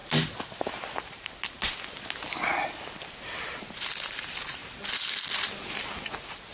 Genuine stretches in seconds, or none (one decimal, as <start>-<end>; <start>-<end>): 0.0-6.5